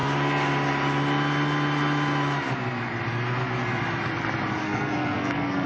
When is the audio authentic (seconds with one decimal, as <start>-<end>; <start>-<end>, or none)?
0.0-4.6